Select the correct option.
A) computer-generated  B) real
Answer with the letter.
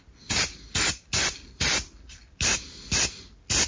B